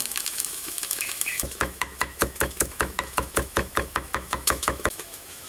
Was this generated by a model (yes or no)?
yes